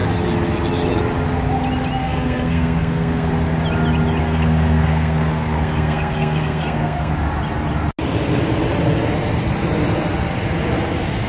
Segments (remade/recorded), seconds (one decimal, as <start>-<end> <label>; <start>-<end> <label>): 0.0-2.0 recorded; 2.0-3.3 remade; 3.3-4.2 recorded; 4.2-7.1 remade; 7.1-11.3 recorded